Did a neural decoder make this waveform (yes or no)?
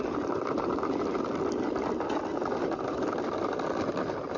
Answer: no